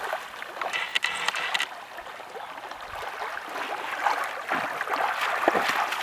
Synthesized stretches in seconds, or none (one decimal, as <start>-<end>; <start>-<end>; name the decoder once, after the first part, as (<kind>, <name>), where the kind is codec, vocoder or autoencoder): none